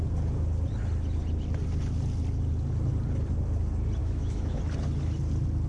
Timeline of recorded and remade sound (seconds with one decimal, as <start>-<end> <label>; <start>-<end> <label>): 0.0-4.0 recorded; 4.0-4.6 remade; 4.6-5.7 recorded